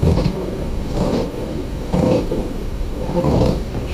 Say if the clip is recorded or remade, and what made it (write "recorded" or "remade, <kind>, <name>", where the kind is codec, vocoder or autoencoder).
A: remade, codec, DAC